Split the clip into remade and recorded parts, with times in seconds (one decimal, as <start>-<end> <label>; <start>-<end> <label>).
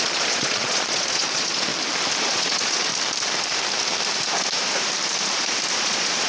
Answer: 0.0-1.7 remade; 1.7-2.2 recorded; 2.2-2.9 remade; 2.9-5.8 recorded; 5.8-6.3 remade